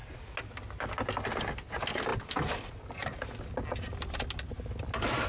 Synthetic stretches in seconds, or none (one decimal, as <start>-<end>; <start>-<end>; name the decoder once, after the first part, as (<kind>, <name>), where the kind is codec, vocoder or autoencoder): none